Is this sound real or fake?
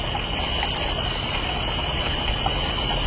real